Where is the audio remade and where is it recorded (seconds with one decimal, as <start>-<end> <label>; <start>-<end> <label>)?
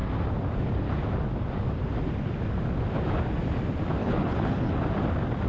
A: 0.0-4.0 recorded; 4.0-4.7 remade; 4.7-5.5 recorded